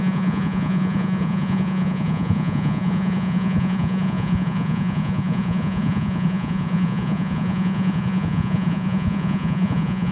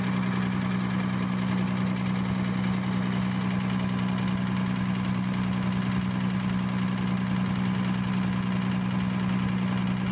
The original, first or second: second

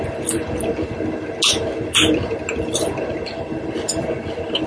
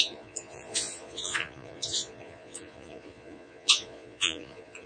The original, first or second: first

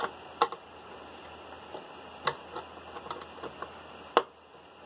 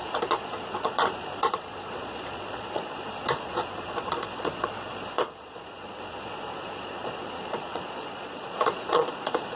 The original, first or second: first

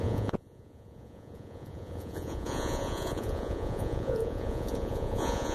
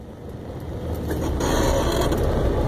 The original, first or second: second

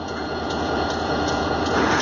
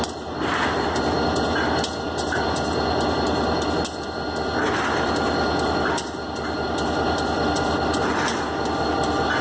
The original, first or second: second